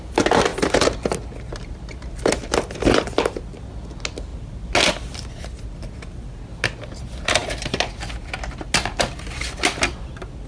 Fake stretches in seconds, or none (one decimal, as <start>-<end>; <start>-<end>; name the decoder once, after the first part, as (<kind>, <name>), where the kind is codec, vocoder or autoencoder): none